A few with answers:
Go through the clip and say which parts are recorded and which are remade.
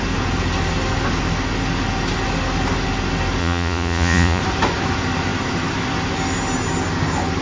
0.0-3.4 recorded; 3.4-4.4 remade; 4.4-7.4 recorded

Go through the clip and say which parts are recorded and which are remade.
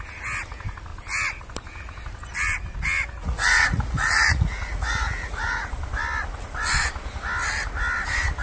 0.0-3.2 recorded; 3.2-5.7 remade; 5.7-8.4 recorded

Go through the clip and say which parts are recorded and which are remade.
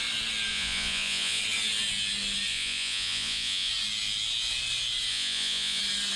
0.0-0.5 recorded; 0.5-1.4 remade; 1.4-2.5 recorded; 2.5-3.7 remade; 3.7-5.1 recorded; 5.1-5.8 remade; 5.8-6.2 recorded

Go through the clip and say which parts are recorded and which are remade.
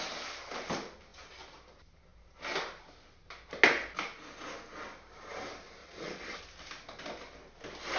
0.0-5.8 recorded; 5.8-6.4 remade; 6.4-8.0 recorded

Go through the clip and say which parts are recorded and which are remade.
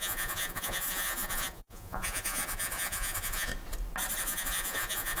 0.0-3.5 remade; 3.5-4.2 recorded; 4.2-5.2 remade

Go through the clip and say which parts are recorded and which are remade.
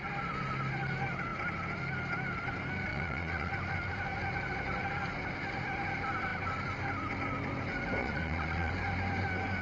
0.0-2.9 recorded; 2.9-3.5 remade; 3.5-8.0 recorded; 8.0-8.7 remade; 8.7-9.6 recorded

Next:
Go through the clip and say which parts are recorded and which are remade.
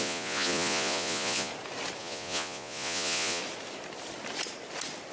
0.0-1.5 remade; 1.5-2.0 recorded; 2.0-3.4 remade; 3.4-5.1 recorded